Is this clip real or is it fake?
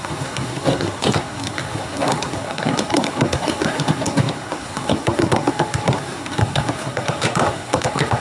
fake